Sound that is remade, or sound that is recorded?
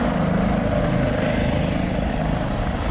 recorded